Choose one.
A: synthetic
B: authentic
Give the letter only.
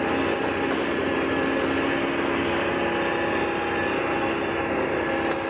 B